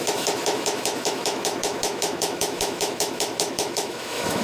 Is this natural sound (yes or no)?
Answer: no